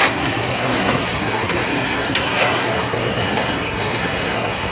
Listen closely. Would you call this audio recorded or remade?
remade